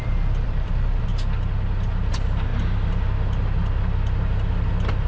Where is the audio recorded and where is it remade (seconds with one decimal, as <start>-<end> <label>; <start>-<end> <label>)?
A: 0.0-1.1 remade; 1.1-2.1 recorded; 2.1-2.5 remade; 2.5-5.1 recorded